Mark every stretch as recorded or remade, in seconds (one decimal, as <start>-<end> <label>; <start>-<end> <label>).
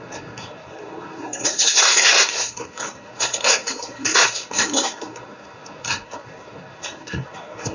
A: 0.0-7.7 remade